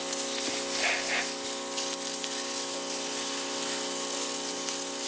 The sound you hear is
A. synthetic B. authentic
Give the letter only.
B